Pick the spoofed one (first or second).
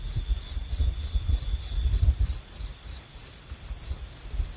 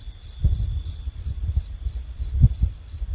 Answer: second